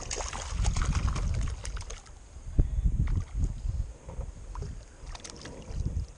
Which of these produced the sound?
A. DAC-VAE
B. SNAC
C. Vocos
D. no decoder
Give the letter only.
D